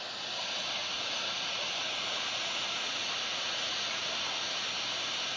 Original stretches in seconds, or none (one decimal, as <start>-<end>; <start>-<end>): 0.0-0.8; 4.0-5.4